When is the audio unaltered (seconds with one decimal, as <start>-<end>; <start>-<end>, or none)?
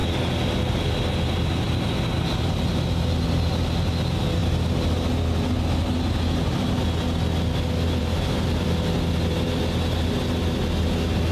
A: 0.0-11.3